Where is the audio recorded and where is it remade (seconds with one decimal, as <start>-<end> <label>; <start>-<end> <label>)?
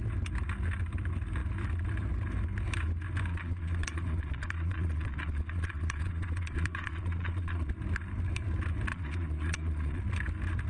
0.0-3.3 recorded; 3.3-7.7 remade; 7.7-8.9 recorded; 8.9-10.0 remade; 10.0-10.7 recorded